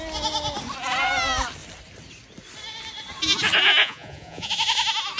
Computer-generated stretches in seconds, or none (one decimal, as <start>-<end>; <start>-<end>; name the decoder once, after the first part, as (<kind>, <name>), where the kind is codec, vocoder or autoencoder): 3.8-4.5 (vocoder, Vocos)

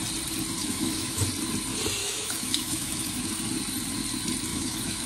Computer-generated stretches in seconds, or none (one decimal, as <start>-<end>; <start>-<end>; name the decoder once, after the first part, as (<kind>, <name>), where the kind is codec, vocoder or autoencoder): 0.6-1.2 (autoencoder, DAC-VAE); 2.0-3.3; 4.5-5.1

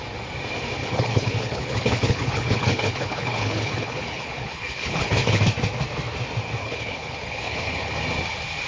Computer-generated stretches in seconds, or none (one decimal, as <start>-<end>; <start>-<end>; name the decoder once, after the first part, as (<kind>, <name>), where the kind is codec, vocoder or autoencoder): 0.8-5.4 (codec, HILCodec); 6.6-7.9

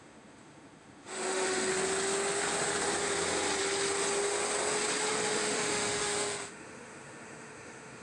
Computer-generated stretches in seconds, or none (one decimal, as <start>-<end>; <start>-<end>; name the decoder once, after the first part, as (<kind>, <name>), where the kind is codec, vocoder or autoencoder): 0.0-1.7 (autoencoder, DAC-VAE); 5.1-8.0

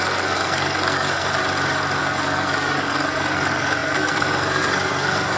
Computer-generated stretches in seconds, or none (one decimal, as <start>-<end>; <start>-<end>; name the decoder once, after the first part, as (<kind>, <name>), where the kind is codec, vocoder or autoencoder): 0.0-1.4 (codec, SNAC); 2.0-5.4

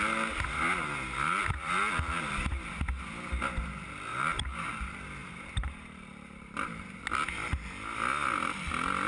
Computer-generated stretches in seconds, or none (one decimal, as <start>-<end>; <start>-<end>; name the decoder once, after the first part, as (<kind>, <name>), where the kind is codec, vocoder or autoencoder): 4.1-4.7 (vocoder, BigVGAN v2); 5.2-7.0

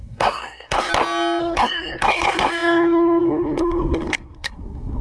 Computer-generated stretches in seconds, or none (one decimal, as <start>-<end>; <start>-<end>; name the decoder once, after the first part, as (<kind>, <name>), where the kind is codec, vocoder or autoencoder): 0.0-0.9 (codec, SNAC); 1.4-5.0